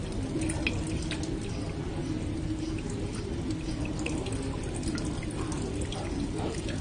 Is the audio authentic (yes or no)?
yes